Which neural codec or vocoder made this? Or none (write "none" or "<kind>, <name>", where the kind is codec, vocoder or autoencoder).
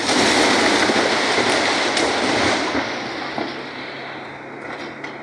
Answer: none